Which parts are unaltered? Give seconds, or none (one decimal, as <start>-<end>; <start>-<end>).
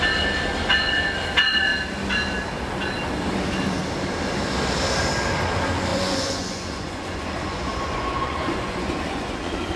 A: 0.0-5.9